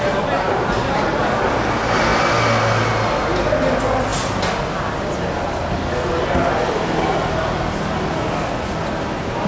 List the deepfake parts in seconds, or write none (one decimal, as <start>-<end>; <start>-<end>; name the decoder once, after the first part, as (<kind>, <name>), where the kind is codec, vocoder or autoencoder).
none